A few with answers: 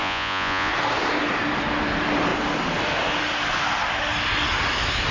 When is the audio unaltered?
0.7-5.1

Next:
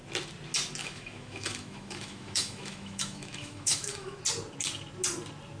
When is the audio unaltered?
0.0-0.8; 4.2-5.6

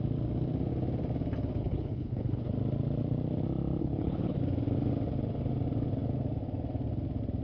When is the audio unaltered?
0.0-1.6; 2.5-3.8; 4.4-7.4

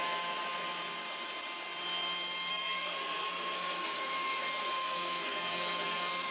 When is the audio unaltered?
0.0-2.5

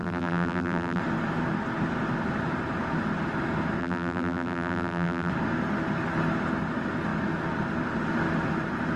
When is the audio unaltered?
1.0-3.8; 5.3-9.0

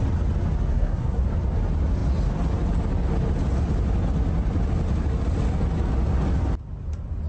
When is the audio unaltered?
0.0-0.7; 1.2-7.3